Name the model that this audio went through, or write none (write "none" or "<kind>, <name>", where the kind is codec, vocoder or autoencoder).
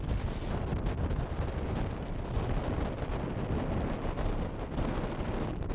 none